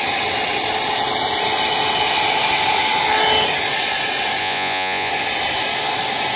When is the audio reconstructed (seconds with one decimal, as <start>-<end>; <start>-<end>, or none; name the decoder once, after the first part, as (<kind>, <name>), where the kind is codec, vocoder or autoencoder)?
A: 4.4-5.1 (vocoder, Vocos)